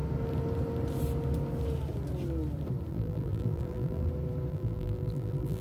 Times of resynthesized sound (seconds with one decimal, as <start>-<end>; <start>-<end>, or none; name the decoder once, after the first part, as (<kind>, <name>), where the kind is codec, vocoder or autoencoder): 2.9-4.1 (vocoder, BigVGAN v2); 4.5-5.6

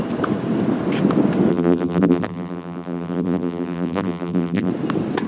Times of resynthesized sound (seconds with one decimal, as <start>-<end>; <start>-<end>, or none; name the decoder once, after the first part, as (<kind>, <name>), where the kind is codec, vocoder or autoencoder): 1.5-4.7 (vocoder, BigVGAN v2)

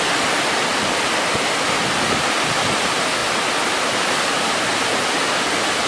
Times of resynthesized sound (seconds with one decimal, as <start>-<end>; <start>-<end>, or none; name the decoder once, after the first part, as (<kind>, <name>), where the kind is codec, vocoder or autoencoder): 0.0-3.2 (vocoder, BigVGAN v2); 5.1-5.9

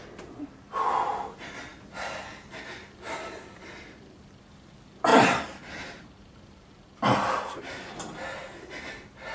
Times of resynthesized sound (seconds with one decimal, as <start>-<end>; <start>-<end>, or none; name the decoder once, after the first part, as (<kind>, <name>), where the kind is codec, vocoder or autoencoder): 5.1-7.6 (vocoder, BigVGAN v2)

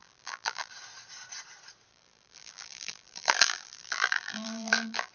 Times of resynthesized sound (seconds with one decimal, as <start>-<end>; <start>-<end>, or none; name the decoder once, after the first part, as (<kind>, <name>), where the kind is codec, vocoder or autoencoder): 0.0-0.7 (vocoder, BigVGAN v2); 1.9-5.1

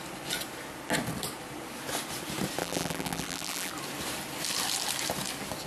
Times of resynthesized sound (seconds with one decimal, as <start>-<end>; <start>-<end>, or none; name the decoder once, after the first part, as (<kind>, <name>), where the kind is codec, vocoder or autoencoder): 2.6-3.7 (vocoder, BigVGAN v2)